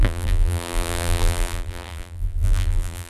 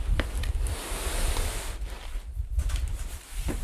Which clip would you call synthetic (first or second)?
first